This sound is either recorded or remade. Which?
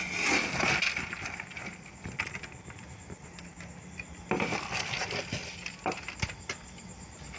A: recorded